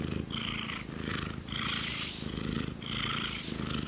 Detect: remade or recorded recorded